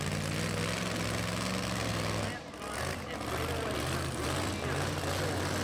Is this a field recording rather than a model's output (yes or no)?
yes